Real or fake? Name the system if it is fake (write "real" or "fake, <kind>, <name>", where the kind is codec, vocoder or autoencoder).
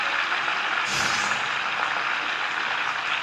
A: real